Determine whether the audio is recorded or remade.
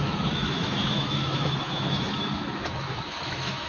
remade